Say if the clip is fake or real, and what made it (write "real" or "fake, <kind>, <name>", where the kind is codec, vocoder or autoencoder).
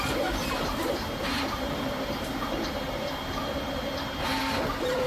fake, vocoder, BigVGAN v2